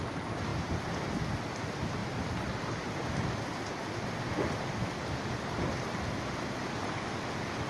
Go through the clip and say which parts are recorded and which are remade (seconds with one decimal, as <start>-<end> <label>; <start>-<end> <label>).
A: 0.0-7.7 remade